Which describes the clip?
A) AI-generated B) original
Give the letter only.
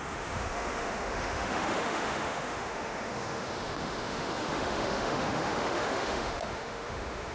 A